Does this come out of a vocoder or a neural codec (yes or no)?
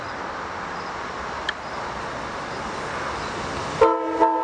no